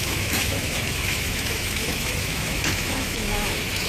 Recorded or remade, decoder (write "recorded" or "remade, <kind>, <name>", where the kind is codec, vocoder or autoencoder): remade, autoencoder, DAC-VAE